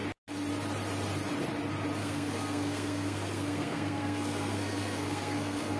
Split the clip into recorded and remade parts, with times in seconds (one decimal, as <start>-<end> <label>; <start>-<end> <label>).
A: 0.0-2.0 recorded; 2.0-5.8 remade